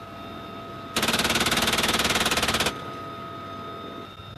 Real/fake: real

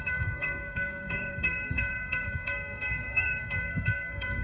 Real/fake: fake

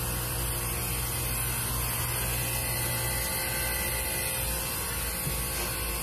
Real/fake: real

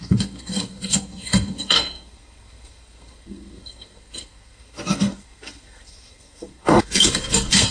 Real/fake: fake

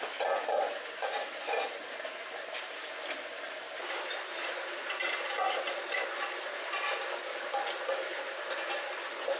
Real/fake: real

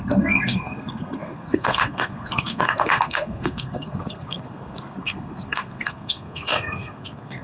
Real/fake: fake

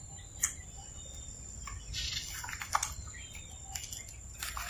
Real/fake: real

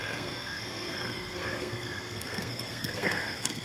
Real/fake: fake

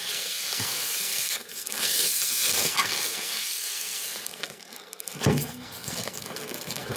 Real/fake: fake